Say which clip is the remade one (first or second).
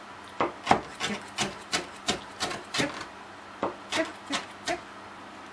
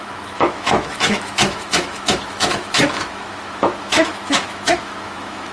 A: second